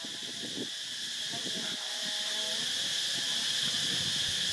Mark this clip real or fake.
real